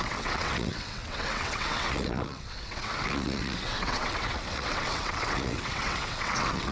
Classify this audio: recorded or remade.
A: remade